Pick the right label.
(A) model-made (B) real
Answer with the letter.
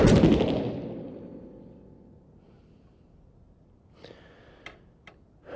B